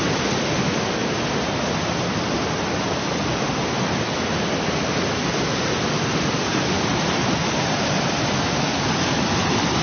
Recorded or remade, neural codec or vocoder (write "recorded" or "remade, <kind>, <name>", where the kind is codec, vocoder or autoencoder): recorded